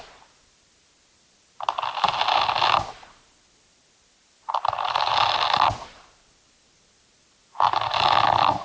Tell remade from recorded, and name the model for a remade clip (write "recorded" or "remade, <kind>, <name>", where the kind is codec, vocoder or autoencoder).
recorded